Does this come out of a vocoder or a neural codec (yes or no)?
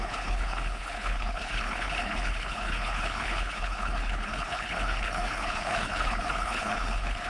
yes